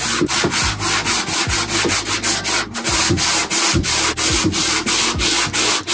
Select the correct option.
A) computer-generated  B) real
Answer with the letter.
B